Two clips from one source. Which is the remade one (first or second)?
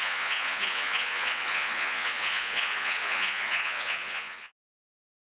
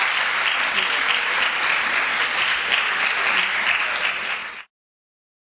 first